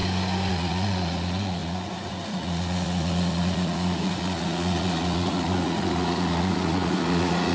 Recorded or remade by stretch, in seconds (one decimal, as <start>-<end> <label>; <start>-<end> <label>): 0.0-0.5 recorded; 0.5-7.5 remade